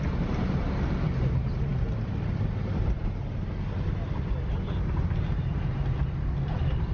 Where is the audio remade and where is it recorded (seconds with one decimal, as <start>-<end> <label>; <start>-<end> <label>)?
0.0-6.9 recorded